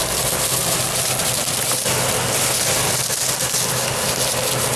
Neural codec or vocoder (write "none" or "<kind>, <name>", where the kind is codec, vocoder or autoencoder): none